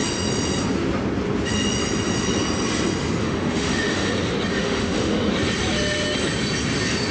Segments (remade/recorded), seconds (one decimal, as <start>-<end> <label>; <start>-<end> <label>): 0.0-3.2 recorded; 3.2-4.1 remade; 4.1-4.5 recorded; 4.5-5.3 remade; 5.3-7.1 recorded